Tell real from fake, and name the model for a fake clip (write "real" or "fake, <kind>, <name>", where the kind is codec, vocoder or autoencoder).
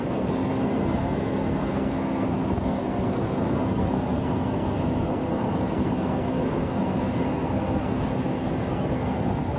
fake, codec, SNAC